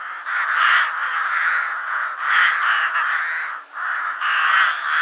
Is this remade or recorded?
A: recorded